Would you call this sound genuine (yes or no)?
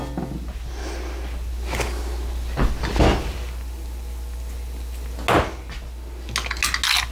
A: yes